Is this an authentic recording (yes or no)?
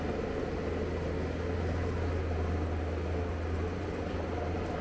yes